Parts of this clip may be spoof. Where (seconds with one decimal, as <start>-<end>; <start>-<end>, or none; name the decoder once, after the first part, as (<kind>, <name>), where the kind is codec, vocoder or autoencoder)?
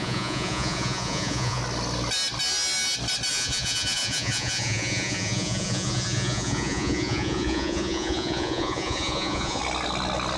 0.0-1.6 (vocoder, Vocos); 3.3-9.6